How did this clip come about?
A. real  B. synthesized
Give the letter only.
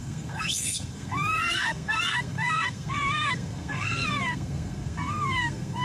B